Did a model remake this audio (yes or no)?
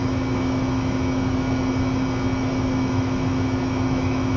yes